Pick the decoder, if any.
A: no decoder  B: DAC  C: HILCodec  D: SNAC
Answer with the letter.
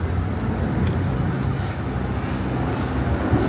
A